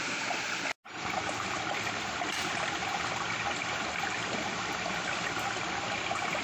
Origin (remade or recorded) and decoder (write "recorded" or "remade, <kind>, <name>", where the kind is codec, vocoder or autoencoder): recorded